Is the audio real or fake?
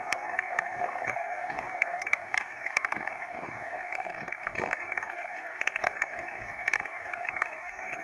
fake